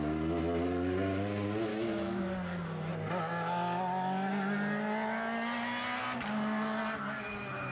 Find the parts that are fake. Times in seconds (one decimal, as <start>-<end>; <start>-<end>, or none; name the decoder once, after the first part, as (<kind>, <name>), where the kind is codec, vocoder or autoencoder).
1.7-2.2 (autoencoder, DAC-VAE)